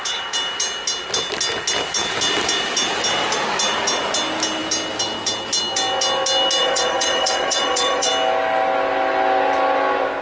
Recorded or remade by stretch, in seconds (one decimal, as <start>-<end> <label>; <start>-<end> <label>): 0.0-6.6 recorded; 6.6-8.1 remade; 8.1-10.2 recorded